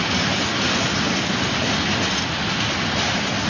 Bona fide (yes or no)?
yes